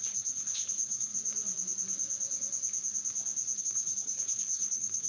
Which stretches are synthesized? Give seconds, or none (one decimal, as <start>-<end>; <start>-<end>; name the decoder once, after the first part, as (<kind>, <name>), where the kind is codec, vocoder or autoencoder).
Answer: 0.0-1.1 (codec, HILCodec); 3.6-5.1